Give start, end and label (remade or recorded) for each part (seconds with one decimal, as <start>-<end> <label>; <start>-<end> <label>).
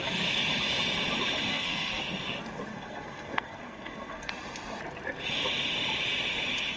0.0-1.5 recorded; 1.5-2.0 remade; 2.0-2.7 recorded; 2.7-4.3 remade; 4.3-6.8 recorded